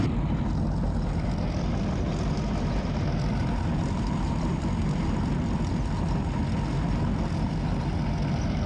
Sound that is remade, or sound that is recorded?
recorded